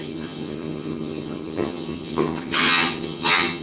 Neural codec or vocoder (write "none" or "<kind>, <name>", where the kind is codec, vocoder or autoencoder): vocoder, HiFi-GAN